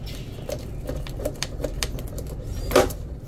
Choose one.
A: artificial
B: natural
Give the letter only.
B